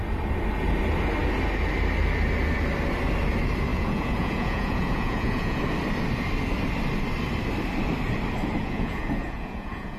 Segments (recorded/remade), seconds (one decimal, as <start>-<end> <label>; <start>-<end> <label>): 0.0-3.7 recorded; 3.7-5.6 remade; 5.6-8.6 recorded; 8.6-10.0 remade